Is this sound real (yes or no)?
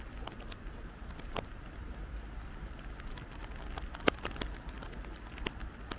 no